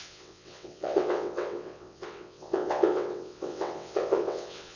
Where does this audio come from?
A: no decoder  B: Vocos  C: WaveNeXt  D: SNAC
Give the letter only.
C